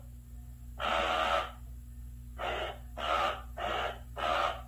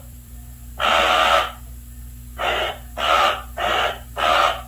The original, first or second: first